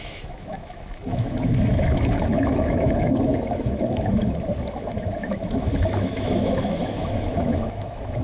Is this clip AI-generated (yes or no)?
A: yes